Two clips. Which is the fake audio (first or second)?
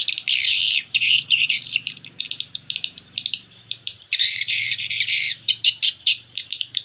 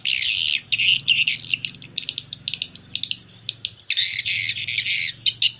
first